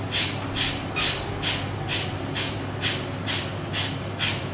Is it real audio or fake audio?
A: real